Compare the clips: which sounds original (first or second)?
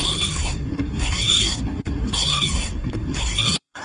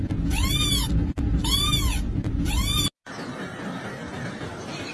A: second